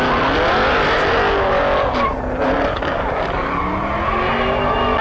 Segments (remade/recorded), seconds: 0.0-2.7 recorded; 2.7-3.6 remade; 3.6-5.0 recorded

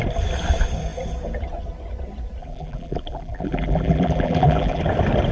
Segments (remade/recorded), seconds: 0.0-2.4 recorded; 2.4-4.8 remade; 4.8-5.3 recorded

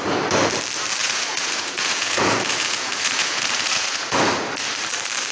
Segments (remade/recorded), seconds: 0.0-1.0 recorded; 1.0-4.2 remade; 4.2-5.3 recorded

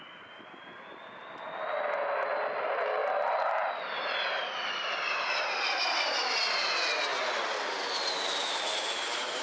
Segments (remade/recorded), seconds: 0.0-3.0 recorded; 3.0-5.8 remade; 5.8-9.4 recorded

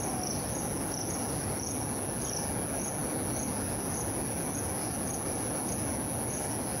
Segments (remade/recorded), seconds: 0.0-6.8 recorded

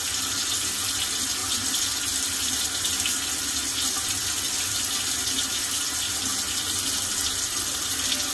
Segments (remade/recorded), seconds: 0.0-8.3 recorded

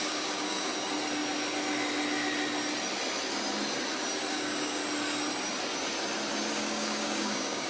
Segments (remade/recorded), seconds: 0.0-0.7 remade; 0.7-4.3 recorded; 4.3-4.8 remade; 4.8-6.5 recorded; 6.5-7.7 remade

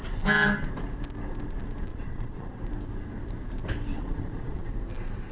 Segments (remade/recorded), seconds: 0.0-1.9 recorded; 1.9-2.6 remade; 2.6-3.9 recorded; 3.9-4.6 remade; 4.6-5.3 recorded